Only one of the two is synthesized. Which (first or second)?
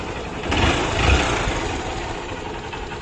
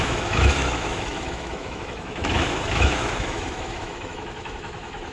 second